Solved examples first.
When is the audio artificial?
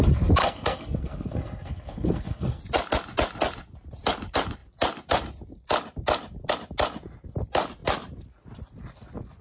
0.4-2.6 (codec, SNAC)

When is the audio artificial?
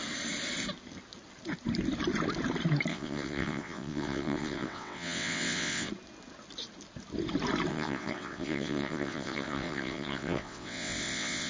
2.9-5.9 (vocoder, WaveNeXt); 7.7-11.5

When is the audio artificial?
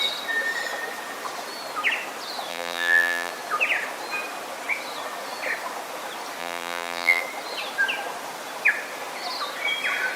2.5-3.3 (vocoder, BigVGAN v2); 6.4-7.2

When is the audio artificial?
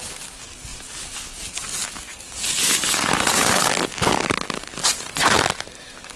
0.0-4.8 (codec, DAC); 5.8-6.2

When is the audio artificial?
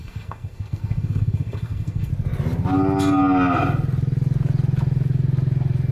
0.0-2.1 (codec, SNAC)